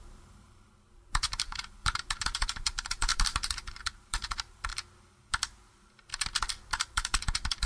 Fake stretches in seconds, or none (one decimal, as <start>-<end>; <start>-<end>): 0.0-4.7; 5.6-6.1; 6.8-7.7